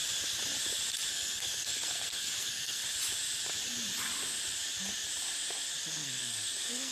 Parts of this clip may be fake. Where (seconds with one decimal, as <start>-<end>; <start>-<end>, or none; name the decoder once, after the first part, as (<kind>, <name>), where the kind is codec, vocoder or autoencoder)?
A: 1.1-2.8 (codec, SNAC); 5.9-6.9

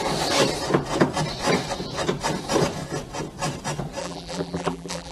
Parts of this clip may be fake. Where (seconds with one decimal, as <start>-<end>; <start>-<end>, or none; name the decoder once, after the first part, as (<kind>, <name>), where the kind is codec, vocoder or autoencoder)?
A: 4.0-5.1 (vocoder, BigVGAN v2)

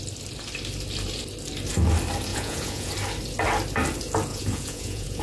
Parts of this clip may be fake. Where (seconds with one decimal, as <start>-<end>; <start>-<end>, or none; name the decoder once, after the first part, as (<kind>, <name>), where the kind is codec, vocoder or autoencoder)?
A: 2.3-2.9 (vocoder, Vocos); 4.3-5.2

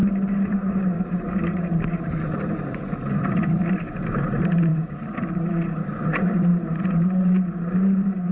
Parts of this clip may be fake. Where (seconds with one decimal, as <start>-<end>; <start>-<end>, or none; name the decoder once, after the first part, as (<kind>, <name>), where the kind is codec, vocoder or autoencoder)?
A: 0.8-8.3 (vocoder, BigVGAN v2)

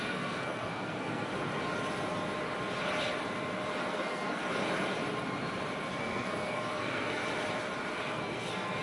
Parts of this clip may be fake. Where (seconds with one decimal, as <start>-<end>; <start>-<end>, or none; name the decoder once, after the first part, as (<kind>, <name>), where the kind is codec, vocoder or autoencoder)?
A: 0.0-1.3 (codec, SNAC); 3.9-4.4; 6.0-7.2; 7.9-8.8

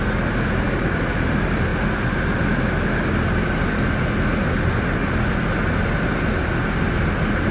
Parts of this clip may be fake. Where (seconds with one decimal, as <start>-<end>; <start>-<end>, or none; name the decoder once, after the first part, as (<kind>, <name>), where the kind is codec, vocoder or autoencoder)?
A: none

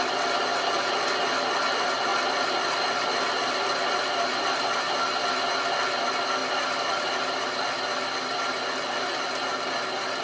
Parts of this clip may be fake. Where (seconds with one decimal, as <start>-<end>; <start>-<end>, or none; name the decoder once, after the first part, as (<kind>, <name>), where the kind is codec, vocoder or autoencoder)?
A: none